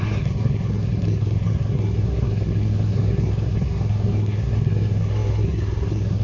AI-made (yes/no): yes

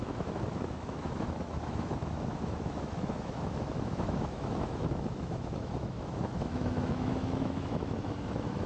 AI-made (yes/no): yes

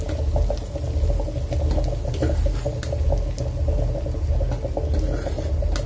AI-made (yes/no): no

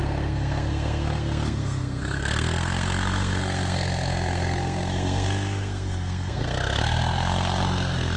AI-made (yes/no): yes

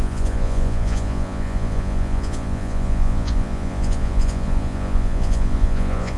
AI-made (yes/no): yes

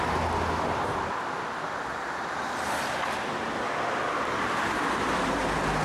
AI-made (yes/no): no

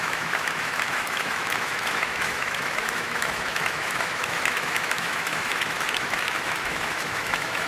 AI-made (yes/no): yes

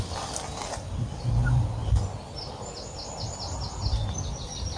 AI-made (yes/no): no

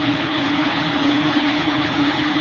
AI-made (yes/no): yes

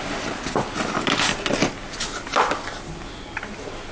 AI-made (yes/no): no